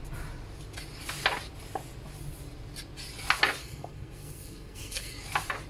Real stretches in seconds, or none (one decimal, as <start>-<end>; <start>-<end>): 0.0-3.6; 5.2-5.7